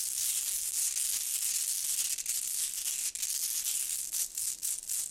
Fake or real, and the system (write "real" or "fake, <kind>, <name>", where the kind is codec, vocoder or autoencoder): real